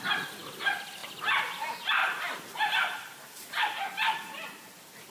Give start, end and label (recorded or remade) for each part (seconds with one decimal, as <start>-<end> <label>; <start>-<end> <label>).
0.0-2.0 recorded; 2.0-5.1 remade